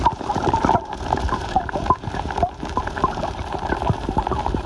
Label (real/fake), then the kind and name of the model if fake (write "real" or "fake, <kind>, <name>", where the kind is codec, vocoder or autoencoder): fake, vocoder, BigVGAN v2